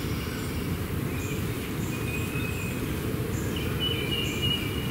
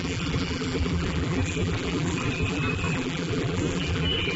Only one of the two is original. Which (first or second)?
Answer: first